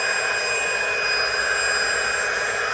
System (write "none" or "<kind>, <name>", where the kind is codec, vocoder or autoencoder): none